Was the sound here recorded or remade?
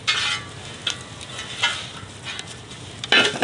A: recorded